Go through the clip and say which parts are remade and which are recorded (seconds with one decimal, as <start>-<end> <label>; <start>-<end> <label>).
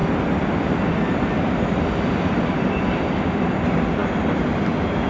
0.0-5.1 remade